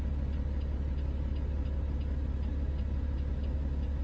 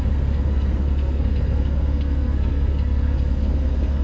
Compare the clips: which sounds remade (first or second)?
second